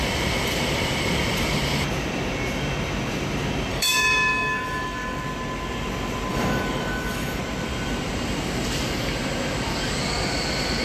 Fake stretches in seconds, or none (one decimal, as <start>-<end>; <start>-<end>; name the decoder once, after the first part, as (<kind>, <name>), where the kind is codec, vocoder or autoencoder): 3.7-5.2 (codec, DAC); 6.3-7.4